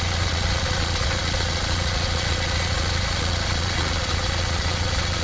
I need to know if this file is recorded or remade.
remade